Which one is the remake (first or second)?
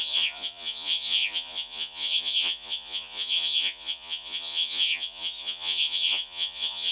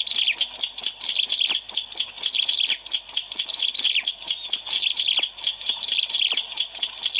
first